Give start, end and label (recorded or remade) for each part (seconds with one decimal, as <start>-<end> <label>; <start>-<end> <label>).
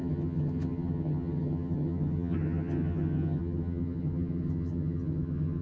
0.0-5.6 remade